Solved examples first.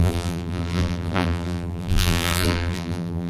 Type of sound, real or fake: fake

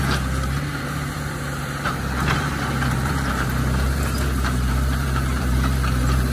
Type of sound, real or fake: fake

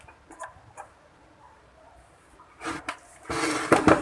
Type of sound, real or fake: fake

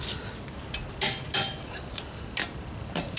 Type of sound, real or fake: fake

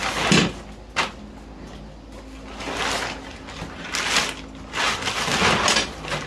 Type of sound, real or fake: real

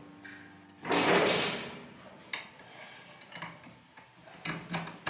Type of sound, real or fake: real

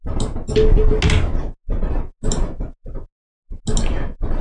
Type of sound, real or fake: real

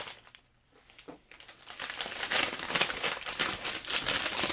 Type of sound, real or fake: fake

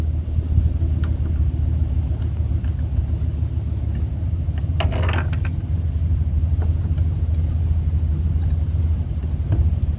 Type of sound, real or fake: real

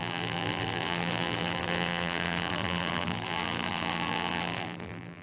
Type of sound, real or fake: fake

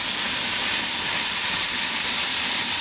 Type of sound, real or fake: fake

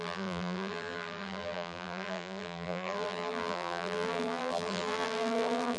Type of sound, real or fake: fake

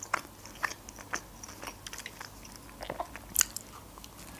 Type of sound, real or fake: real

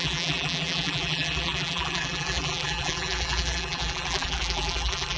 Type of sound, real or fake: fake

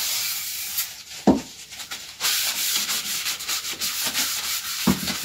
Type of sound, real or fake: fake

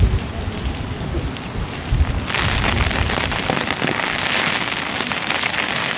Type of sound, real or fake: real